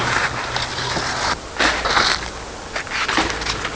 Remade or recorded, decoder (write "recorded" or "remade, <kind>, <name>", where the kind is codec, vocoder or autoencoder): recorded